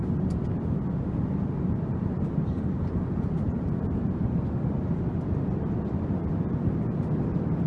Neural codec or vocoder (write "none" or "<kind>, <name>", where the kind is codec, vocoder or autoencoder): none